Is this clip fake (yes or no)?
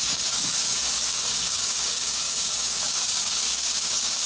yes